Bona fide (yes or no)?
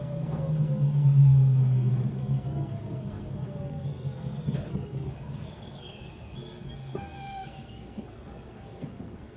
no